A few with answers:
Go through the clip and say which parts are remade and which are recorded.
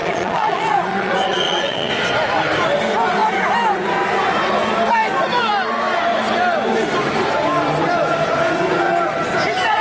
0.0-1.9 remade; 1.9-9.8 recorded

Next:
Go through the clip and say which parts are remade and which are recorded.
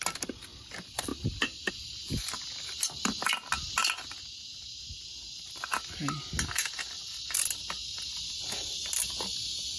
0.0-9.8 recorded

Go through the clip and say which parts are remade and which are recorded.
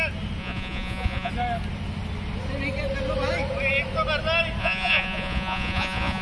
0.0-0.4 recorded; 0.4-1.3 remade; 1.3-4.6 recorded; 4.6-6.2 remade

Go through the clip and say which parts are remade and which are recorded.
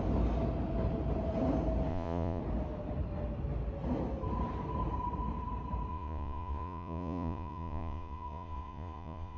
0.0-1.9 recorded; 1.9-2.4 remade; 2.4-5.9 recorded; 5.9-9.4 remade